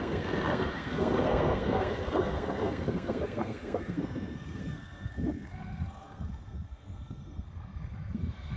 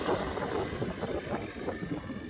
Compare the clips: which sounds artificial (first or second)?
first